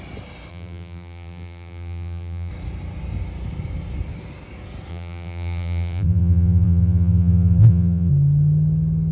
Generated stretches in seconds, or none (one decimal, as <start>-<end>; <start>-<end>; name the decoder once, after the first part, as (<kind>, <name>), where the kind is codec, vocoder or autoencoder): 0.5-2.5 (vocoder, BigVGAN v2); 4.9-8.1